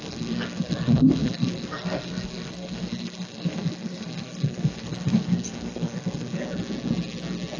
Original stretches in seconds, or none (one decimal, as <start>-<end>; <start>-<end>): 6.4-7.6